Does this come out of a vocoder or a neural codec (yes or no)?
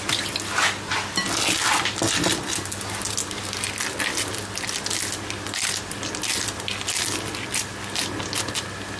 no